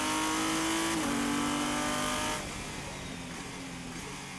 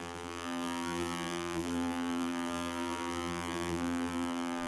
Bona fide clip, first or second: first